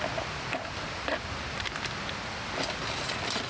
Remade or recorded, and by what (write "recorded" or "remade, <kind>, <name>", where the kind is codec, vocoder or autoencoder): recorded